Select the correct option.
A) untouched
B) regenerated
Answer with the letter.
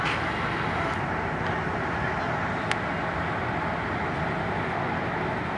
A